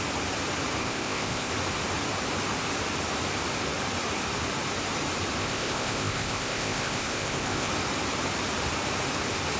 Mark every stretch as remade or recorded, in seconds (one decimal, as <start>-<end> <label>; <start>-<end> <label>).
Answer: 0.0-0.8 recorded; 0.8-1.5 remade; 1.5-5.4 recorded; 5.4-7.7 remade; 7.7-9.6 recorded